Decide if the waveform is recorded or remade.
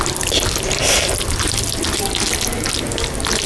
recorded